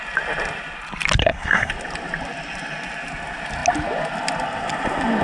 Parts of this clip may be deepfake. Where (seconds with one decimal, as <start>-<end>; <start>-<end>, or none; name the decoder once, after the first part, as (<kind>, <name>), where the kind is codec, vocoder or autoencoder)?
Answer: 1.2-1.7 (codec, SNAC)